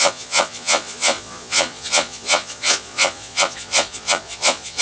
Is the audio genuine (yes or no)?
no